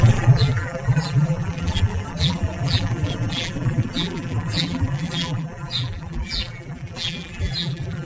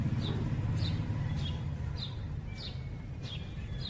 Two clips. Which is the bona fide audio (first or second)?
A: second